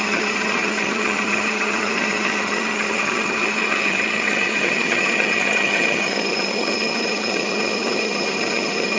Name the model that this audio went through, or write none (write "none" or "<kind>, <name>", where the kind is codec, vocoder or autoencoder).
vocoder, HiFi-GAN